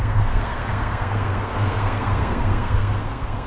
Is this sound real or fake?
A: fake